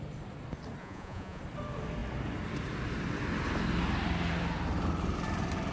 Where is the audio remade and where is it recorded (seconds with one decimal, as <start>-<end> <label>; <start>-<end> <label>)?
0.0-0.8 recorded; 0.8-1.4 remade; 1.4-5.7 recorded